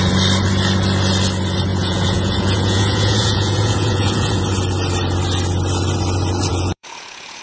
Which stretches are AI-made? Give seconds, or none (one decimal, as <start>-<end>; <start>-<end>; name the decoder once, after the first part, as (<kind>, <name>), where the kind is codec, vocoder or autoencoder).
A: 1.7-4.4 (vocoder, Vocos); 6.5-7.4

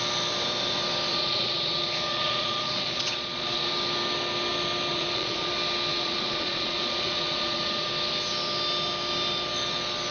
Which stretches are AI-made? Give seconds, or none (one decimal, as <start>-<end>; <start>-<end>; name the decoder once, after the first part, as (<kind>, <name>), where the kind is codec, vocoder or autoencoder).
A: 1.1-3.7 (vocoder, Vocos); 4.9-5.5; 5.9-7.9

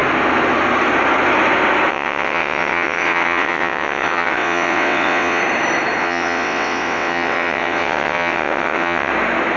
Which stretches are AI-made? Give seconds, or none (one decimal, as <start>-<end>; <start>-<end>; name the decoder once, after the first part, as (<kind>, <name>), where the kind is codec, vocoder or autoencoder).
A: 1.9-5.4 (vocoder, WaveNeXt); 6.0-9.1

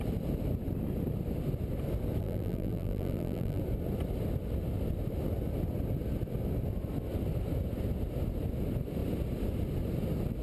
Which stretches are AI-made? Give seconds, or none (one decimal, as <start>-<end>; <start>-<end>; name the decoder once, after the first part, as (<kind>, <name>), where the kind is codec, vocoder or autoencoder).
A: 2.2-3.6 (vocoder, BigVGAN v2)

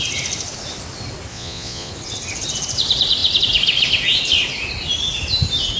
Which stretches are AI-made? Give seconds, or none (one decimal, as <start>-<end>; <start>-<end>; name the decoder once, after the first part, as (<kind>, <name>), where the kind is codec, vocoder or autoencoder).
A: 1.3-1.9 (vocoder, Vocos)

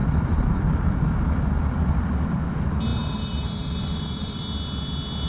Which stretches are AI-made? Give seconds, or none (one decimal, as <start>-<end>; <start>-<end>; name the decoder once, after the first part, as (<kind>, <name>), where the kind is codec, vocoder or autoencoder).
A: 0.0-0.6 (vocoder, BigVGAN v2); 2.9-4.4